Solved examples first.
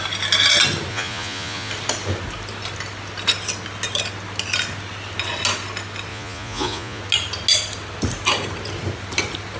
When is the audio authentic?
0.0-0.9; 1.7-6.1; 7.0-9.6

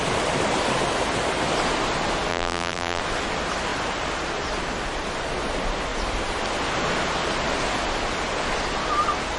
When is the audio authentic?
0.0-2.3; 3.0-9.4

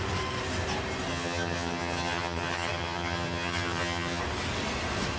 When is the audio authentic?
0.0-1.1; 4.2-5.2

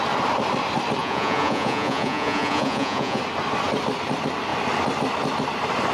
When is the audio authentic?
0.0-1.0; 3.2-5.9